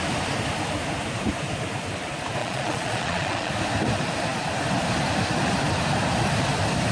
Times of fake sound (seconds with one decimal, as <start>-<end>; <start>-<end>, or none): 2.4-3.5